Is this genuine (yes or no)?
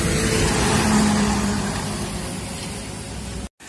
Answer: yes